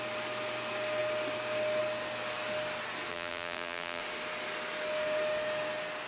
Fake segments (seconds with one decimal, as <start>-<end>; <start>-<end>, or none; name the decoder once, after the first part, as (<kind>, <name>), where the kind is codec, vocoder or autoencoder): 3.1-4.0 (vocoder, BigVGAN v2)